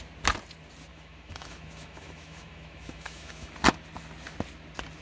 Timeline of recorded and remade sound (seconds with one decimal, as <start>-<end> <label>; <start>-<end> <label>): 0.0-0.9 recorded; 0.9-3.5 remade; 3.5-5.0 recorded